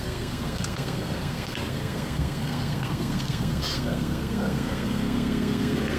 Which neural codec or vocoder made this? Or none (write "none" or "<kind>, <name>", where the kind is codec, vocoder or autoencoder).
codec, SNAC